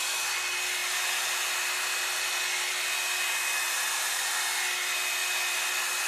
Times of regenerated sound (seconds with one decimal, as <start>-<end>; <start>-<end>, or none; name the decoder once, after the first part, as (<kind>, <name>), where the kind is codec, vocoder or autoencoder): none